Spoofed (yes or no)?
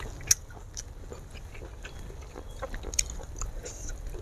no